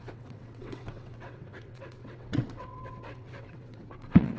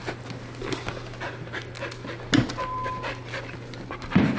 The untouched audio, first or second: second